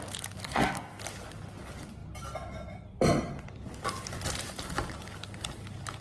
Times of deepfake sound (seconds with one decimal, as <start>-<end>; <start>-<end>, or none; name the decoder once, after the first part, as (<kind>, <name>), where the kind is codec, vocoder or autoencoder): 0.4-1.0 (codec, SNAC)